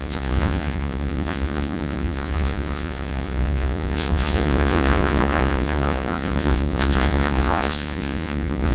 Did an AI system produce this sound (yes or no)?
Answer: yes